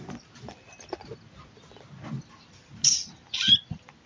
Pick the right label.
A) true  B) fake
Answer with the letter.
A